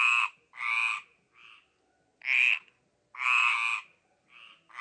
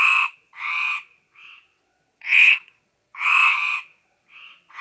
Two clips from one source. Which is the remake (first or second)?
second